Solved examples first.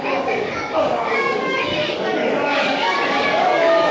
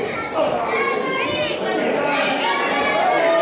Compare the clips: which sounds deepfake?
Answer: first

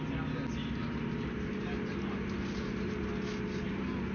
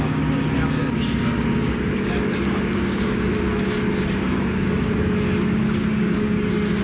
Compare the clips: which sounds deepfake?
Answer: second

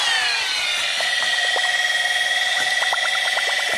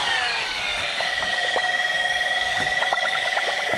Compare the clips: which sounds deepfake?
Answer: second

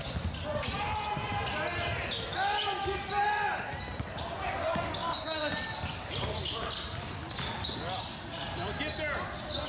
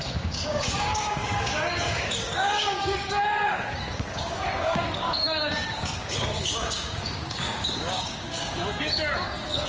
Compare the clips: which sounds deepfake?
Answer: second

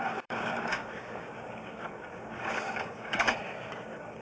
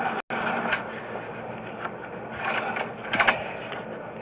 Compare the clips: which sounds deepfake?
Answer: first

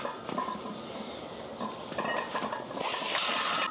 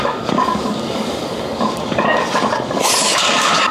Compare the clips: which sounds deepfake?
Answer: second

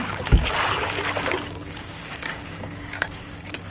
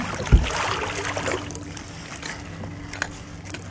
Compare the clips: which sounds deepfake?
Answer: first